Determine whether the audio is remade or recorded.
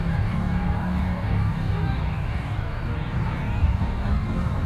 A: remade